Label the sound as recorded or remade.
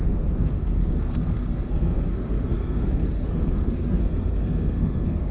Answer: remade